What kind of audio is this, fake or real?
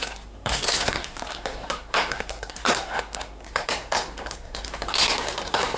fake